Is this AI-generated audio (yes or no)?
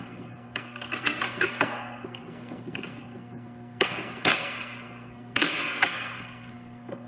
yes